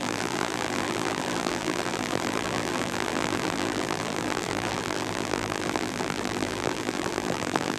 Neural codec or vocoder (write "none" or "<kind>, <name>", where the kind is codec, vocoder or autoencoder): vocoder, BigVGAN v2